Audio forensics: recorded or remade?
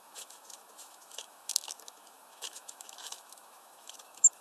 remade